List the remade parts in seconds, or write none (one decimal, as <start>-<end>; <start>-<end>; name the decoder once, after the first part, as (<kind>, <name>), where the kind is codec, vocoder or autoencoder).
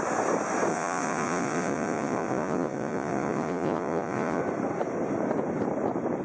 0.7-4.4 (vocoder, Vocos)